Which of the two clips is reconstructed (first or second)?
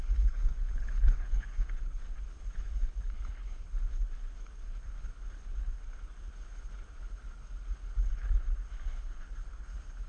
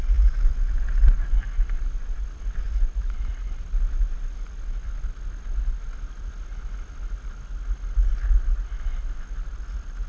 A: first